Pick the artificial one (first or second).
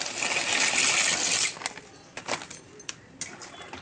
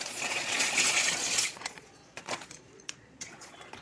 second